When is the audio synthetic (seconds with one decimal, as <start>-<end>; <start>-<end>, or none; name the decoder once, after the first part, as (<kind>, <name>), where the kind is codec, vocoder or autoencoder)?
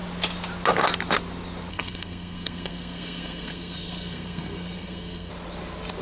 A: 1.7-5.3 (codec, SNAC)